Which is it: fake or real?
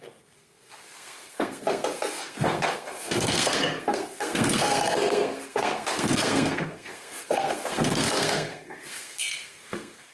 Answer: fake